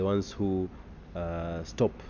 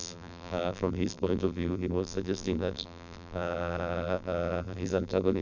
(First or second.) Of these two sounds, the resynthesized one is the second